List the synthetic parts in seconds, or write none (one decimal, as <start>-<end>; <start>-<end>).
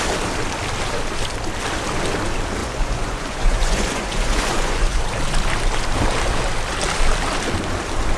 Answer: 2.6-5.0